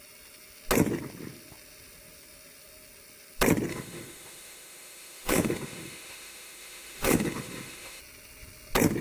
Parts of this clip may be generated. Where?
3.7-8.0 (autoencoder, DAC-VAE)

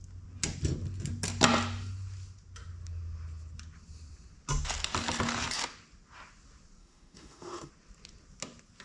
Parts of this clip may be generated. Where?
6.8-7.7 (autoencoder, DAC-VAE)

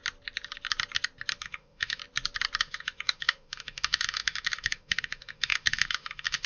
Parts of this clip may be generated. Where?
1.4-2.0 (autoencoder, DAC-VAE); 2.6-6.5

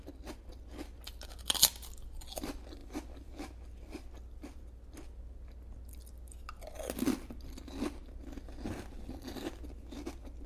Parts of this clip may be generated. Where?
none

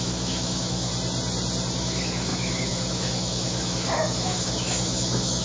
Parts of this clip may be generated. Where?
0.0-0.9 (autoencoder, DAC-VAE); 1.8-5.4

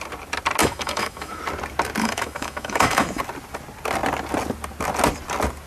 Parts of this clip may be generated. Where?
0.6-1.4 (autoencoder, DAC-VAE); 2.0-3.2

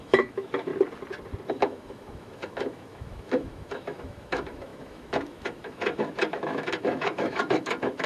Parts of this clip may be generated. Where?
0.0-0.7 (autoencoder, DAC-VAE); 1.5-8.1